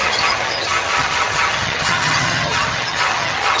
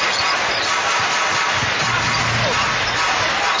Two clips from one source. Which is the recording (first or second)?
second